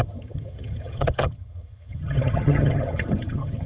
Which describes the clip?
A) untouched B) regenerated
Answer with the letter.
B